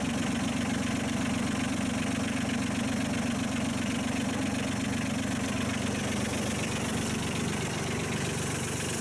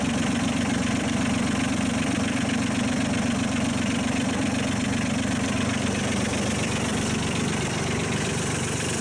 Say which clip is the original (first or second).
first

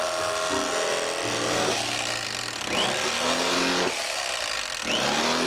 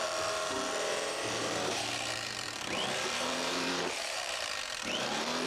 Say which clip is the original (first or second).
first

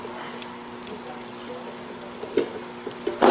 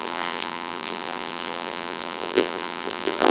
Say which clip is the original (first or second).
first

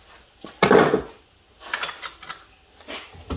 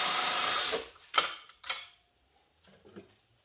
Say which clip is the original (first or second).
first